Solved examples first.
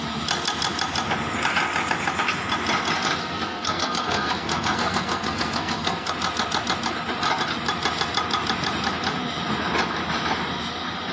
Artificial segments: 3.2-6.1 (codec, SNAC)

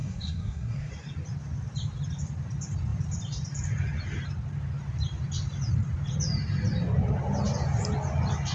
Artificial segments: 0.0-0.9 (codec, SNAC)

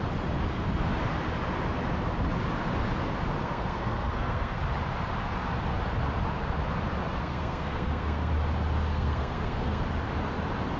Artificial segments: 3.4-4.6 (codec, SNAC); 7.2-8.3; 8.9-9.8

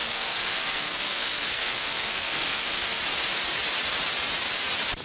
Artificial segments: 0.0-3.0 (codec, SNAC)

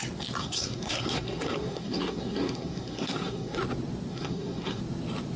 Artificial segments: 0.4-3.6 (codec, SNAC); 4.1-4.8